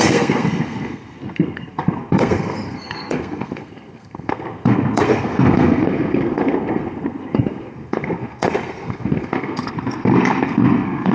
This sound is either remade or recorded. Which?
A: remade